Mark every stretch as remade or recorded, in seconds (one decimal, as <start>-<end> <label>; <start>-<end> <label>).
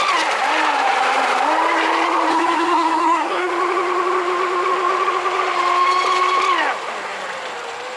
0.0-2.3 recorded; 2.3-3.5 remade; 3.5-8.0 recorded